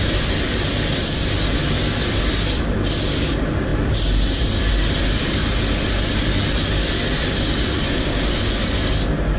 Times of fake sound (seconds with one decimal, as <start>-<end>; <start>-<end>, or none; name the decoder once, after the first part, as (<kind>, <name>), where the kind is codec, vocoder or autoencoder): none